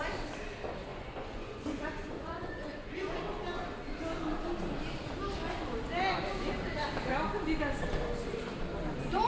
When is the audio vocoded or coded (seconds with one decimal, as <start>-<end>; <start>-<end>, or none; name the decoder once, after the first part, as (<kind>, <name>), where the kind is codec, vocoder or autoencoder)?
0.9-3.2 (vocoder, Vocos)